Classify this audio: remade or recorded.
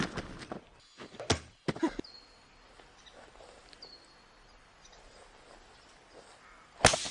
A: recorded